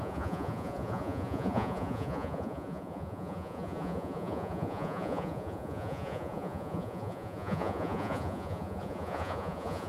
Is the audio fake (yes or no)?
yes